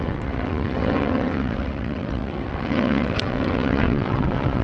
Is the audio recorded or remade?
remade